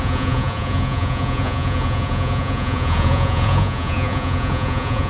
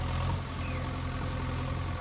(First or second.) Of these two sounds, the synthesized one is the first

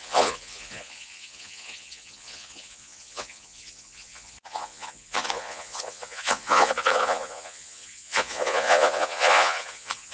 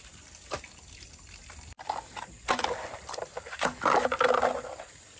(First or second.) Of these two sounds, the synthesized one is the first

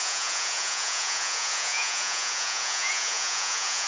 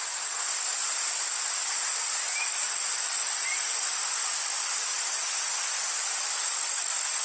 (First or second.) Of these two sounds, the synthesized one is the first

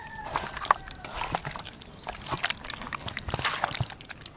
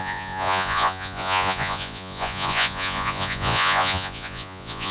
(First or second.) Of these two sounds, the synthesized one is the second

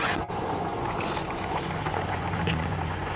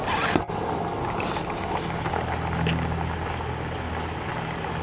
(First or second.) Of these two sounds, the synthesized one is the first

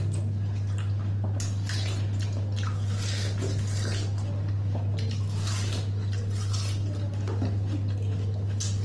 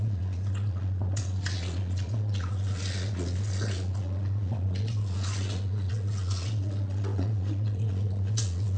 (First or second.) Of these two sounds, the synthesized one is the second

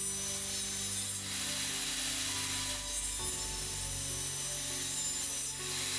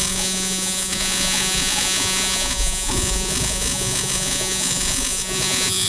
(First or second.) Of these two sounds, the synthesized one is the second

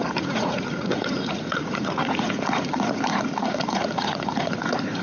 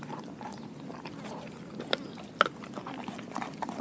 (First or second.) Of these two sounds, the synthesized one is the first